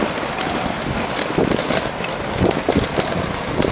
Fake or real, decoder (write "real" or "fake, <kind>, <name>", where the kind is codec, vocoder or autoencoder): fake, vocoder, BigVGAN v2